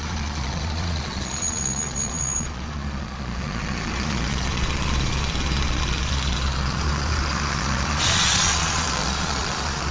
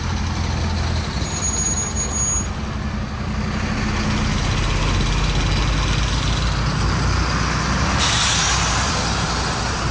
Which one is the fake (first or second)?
first